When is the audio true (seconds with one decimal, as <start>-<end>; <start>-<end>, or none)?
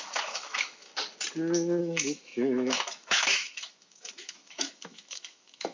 0.9-1.8